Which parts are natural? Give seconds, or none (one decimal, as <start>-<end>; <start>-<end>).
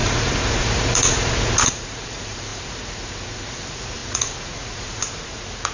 none